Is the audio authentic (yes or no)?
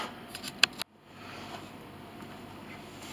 yes